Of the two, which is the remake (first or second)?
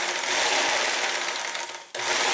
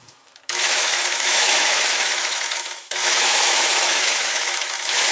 second